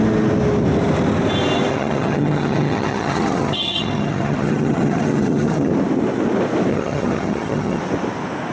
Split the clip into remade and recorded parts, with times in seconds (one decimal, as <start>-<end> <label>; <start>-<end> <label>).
0.0-1.7 recorded; 1.7-5.7 remade; 5.7-6.7 recorded; 6.7-7.8 remade; 7.8-8.5 recorded